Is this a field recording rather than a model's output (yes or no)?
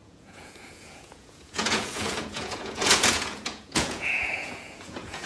no